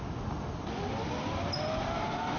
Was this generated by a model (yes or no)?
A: no